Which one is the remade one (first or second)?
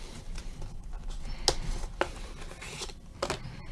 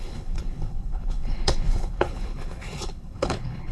second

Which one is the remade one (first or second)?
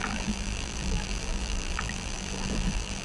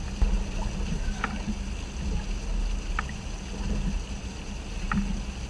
first